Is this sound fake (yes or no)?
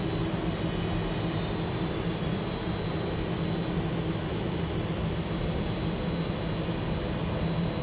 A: no